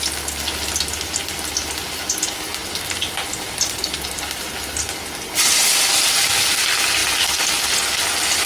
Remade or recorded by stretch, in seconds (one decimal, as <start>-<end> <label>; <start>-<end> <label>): 0.0-8.5 recorded